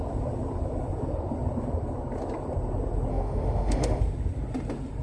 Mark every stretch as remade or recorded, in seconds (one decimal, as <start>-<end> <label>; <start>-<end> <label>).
0.0-3.1 recorded; 3.1-4.0 remade; 4.0-5.0 recorded